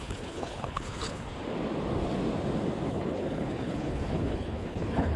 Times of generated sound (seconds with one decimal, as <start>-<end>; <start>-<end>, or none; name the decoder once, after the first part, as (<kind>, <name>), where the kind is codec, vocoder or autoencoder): 0.0-1.3 (codec, HILCodec); 2.9-5.2